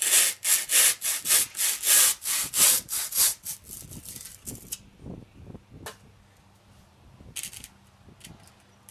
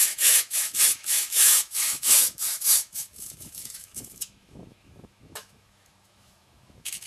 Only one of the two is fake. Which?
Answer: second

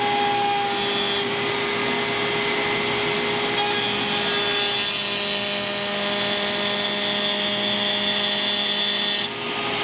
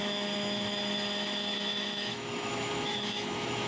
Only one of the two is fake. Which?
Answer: second